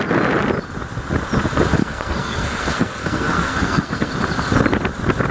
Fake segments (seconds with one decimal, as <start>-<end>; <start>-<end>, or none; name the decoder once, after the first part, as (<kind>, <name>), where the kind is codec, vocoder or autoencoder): 1.8-4.1 (codec, SNAC)